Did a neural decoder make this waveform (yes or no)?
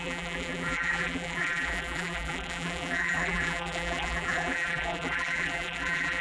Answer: yes